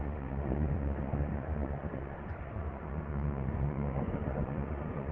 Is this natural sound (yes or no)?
no